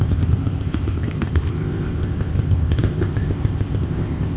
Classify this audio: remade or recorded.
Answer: remade